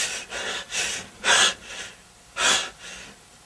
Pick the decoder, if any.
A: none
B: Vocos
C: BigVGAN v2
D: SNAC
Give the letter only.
A